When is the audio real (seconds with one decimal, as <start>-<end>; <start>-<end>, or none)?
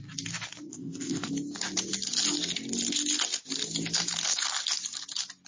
0.0-0.7; 1.3-5.5